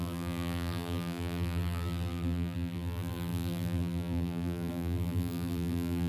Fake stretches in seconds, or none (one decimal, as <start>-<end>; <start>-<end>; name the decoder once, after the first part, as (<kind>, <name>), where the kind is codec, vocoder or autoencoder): 0.0-6.1 (vocoder, BigVGAN v2)